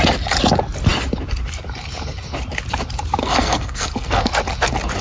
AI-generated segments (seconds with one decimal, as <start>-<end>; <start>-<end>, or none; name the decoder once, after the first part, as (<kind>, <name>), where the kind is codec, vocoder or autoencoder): 3.2-4.3 (codec, SNAC)